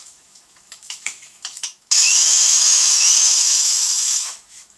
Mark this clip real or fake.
fake